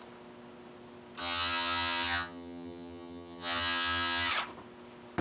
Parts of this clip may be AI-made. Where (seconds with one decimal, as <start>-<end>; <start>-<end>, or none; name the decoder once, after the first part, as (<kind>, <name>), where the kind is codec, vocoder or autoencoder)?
1.2-4.3 (vocoder, HiFi-GAN)